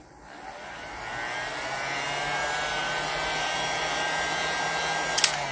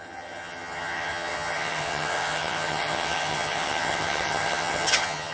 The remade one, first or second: second